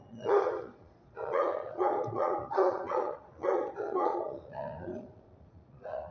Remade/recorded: remade